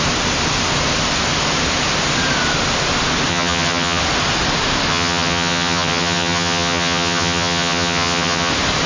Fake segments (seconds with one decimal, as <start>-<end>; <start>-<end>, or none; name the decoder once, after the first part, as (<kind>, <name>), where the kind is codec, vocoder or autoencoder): 3.3-4.0 (vocoder, HiFi-GAN); 4.9-8.5